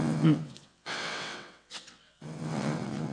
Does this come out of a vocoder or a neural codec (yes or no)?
yes